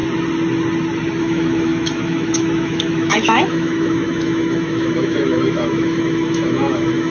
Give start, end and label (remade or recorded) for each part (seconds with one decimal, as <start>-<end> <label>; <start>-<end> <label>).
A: 0.0-1.2 recorded; 1.2-7.1 remade